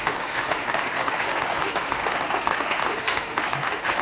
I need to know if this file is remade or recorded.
remade